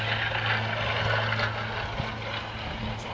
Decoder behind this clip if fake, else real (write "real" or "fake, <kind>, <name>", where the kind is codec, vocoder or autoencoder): real